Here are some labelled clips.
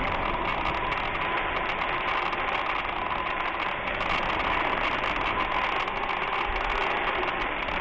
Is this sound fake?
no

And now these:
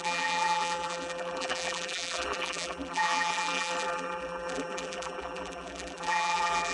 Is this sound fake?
yes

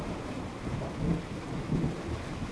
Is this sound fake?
no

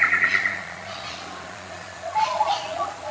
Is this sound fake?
yes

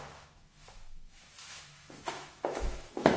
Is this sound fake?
yes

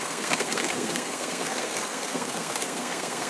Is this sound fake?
yes